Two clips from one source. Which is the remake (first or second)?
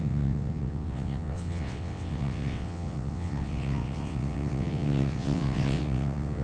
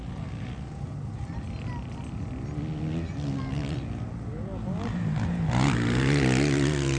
first